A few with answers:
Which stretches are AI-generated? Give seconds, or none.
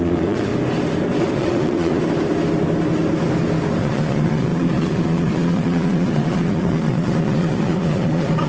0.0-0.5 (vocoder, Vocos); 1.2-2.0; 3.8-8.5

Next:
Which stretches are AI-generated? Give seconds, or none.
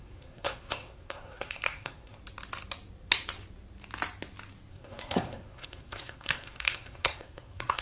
0.0-2.2 (codec, SNAC); 4.7-7.8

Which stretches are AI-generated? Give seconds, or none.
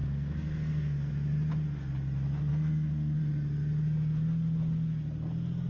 0.0-1.1 (codec, SNAC); 2.5-3.2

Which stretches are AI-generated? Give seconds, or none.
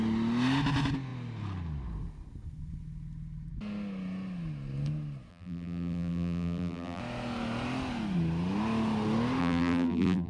5.3-7.0 (vocoder, BigVGAN v2); 9.4-10.3